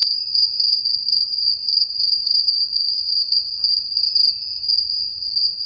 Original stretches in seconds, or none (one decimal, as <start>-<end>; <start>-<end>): 4.0-4.6